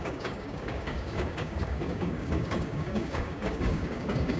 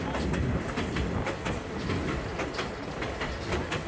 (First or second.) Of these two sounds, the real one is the second